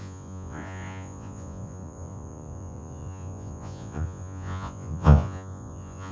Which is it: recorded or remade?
remade